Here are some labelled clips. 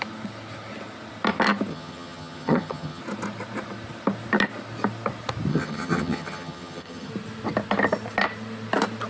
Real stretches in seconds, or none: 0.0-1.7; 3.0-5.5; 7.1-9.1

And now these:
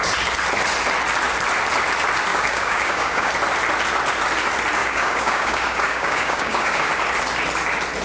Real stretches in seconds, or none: 0.0-2.3; 3.3-4.8; 6.9-8.0

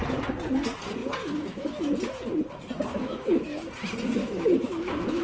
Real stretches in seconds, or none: 0.0-1.0; 1.8-2.9; 3.7-4.2

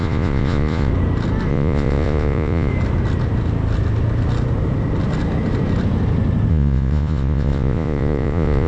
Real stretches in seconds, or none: 0.9-1.5; 2.7-6.5

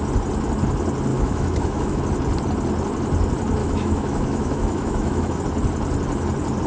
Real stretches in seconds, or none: 0.0-1.1; 2.0-3.6; 5.4-6.7